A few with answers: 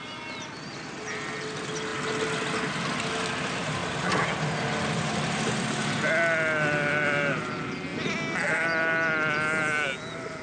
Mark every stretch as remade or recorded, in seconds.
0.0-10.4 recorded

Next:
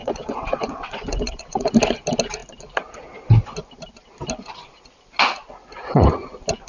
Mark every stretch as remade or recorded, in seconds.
0.0-1.7 remade; 1.7-6.7 recorded

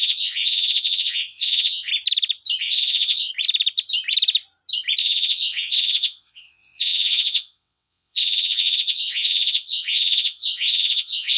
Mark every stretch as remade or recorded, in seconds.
0.0-1.9 remade; 1.9-2.6 recorded; 2.6-3.3 remade; 3.3-5.0 recorded; 5.0-11.4 remade

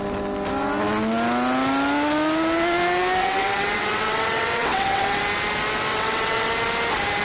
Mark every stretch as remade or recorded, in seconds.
0.0-3.2 recorded; 3.2-5.2 remade; 5.2-5.9 recorded; 5.9-6.5 remade; 6.5-7.2 recorded

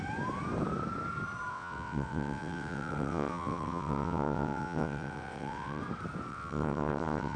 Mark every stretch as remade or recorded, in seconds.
0.0-1.5 recorded; 1.5-5.8 remade; 5.8-6.3 recorded; 6.3-7.4 remade

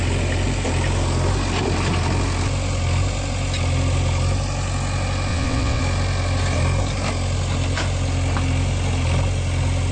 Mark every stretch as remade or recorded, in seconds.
0.0-5.3 recorded; 5.3-5.8 remade; 5.8-9.9 recorded

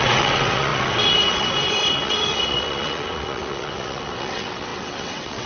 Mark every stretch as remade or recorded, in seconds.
0.0-5.5 remade

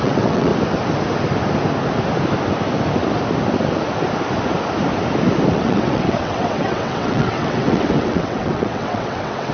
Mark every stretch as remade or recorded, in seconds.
0.0-0.5 remade; 0.5-5.5 recorded; 5.5-9.5 remade